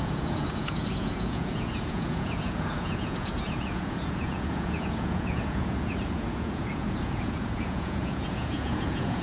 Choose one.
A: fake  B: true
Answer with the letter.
A